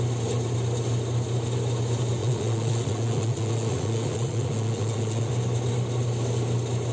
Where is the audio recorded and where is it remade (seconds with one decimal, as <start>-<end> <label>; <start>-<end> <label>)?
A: 0.0-2.2 recorded; 2.2-5.3 remade; 5.3-6.9 recorded